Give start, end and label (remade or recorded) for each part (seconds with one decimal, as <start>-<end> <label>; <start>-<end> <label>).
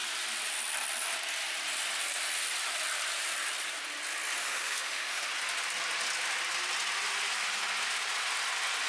0.0-4.4 recorded; 4.4-5.3 remade; 5.3-8.9 recorded